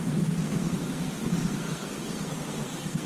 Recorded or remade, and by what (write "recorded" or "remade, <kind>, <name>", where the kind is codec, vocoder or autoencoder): remade, codec, SNAC